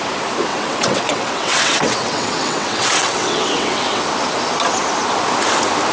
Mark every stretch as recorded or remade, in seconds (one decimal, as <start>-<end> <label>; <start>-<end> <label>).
0.0-0.5 recorded; 0.5-4.0 remade; 4.0-5.9 recorded